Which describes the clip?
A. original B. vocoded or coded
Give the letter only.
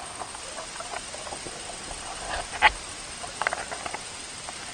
A